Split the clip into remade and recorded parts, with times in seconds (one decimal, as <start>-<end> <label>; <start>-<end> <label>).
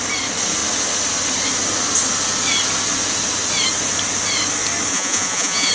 0.0-4.9 recorded; 4.9-5.7 remade